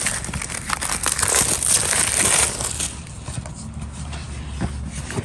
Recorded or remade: recorded